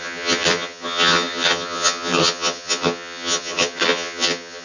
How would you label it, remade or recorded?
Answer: remade